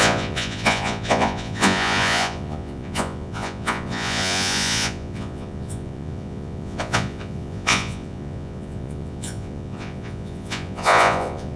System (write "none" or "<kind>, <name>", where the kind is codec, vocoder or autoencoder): vocoder, Vocos